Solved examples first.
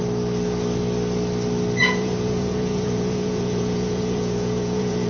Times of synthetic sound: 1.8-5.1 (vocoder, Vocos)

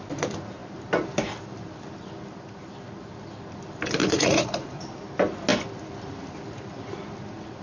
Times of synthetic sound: 4.0-4.8 (vocoder, Vocos)

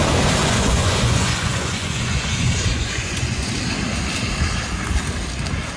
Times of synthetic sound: 0.4-3.5 (vocoder, Vocos)

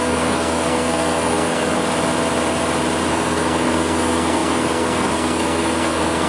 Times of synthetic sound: 0.0-1.8 (codec, SNAC); 3.1-6.3